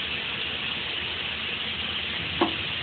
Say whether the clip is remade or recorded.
recorded